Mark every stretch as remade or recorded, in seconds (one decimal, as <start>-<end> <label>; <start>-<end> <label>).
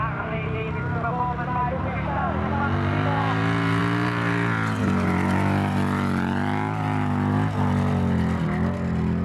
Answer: 0.0-9.2 recorded